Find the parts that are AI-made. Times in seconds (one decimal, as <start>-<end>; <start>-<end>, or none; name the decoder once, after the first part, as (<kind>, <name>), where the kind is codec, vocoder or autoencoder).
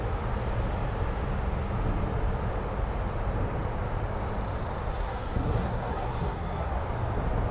4.9-6.7 (codec, SNAC)